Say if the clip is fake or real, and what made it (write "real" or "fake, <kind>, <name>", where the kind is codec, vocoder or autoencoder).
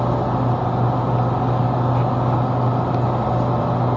real